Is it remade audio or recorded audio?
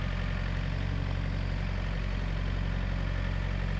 recorded